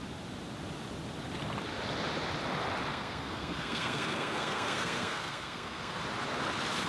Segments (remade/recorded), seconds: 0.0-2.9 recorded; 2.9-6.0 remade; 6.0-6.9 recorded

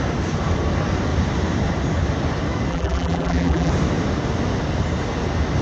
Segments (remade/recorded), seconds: 0.0-2.7 recorded; 2.7-3.7 remade; 3.7-5.6 recorded

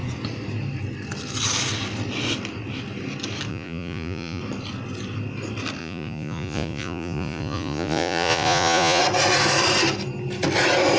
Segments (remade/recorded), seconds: 0.0-3.5 recorded; 3.5-4.4 remade; 4.4-5.8 recorded; 5.8-9.0 remade; 9.0-11.0 recorded